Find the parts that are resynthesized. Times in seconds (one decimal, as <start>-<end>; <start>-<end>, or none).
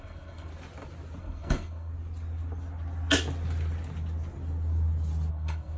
0.0-0.5; 1.2-1.9; 5.3-5.8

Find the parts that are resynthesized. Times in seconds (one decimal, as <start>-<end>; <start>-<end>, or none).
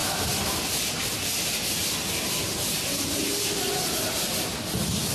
none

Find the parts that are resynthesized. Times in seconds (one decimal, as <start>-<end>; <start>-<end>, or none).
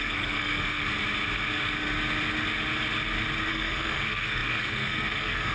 0.0-0.9; 3.5-5.5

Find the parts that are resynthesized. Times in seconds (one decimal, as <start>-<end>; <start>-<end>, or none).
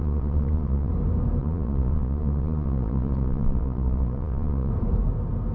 0.0-0.9; 1.4-4.7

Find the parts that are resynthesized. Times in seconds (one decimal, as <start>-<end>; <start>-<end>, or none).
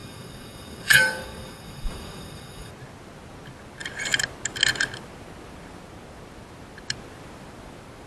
0.0-2.7